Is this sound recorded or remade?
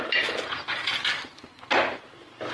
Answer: recorded